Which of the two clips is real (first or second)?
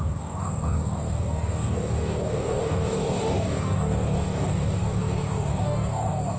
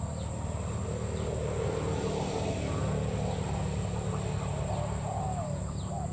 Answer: second